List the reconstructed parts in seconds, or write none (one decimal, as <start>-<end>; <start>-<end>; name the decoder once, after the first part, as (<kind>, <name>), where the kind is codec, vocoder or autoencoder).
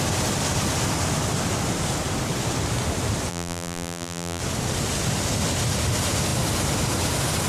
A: 3.3-4.4 (vocoder, BigVGAN v2)